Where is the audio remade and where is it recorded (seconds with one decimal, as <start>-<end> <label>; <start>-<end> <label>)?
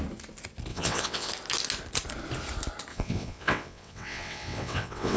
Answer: 0.0-0.7 recorded; 0.7-1.3 remade; 1.3-2.9 recorded; 2.9-5.2 remade